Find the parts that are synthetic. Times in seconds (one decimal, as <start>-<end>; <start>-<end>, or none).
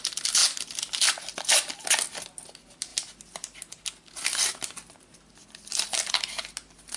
5.7-6.4